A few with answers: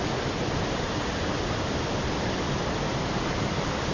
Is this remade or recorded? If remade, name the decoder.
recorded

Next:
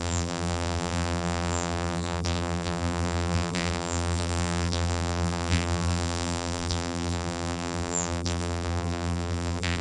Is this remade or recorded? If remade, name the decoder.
remade, vocoder, BigVGAN v2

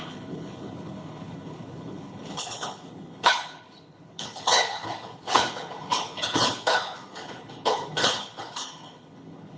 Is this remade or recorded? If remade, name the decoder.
remade, codec, HILCodec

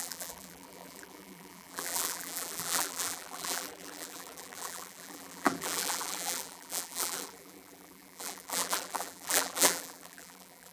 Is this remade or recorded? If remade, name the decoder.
remade, vocoder, BigVGAN v2